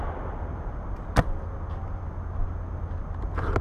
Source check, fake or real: real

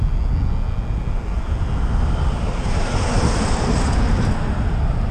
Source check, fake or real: real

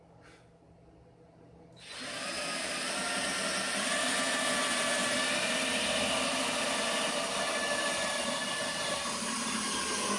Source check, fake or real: real